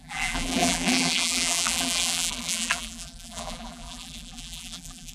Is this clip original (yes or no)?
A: no